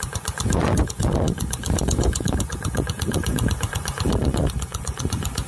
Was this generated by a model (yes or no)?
yes